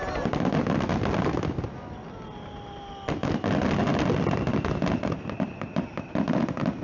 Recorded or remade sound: recorded